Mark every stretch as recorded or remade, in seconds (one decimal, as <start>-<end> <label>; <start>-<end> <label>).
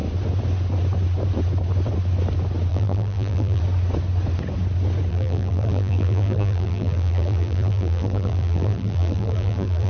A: 0.0-2.7 recorded; 2.7-3.6 remade; 3.6-5.1 recorded; 5.1-9.9 remade